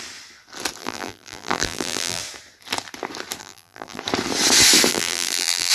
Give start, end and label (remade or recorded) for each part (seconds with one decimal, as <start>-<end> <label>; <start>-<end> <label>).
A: 0.0-0.8 recorded; 0.8-2.2 remade; 2.2-3.4 recorded; 3.4-4.0 remade; 4.0-4.9 recorded; 4.9-5.7 remade